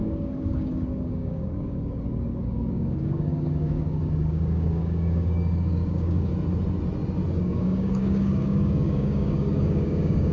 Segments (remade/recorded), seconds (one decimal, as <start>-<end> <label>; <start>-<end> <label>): 0.0-6.3 remade; 6.3-7.4 recorded; 7.4-10.3 remade